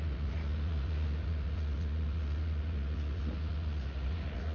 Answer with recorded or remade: remade